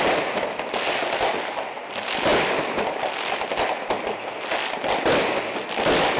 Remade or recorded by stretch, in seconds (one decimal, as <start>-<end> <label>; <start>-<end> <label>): 0.0-6.2 recorded